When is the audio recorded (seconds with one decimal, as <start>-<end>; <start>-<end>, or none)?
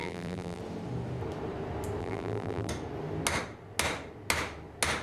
0.6-2.0; 2.7-5.0